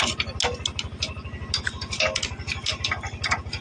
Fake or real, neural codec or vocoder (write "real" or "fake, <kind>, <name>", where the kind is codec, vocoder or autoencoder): real